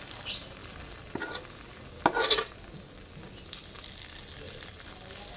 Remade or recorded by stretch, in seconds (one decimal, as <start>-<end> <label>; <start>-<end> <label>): 0.0-5.4 recorded